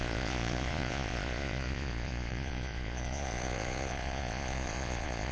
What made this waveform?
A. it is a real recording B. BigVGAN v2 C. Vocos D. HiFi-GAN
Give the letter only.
C